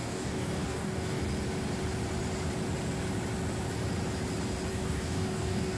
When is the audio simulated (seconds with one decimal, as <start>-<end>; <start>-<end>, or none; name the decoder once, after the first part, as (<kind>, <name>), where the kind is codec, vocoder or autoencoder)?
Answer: 0.0-1.2 (codec, DAC); 4.7-5.8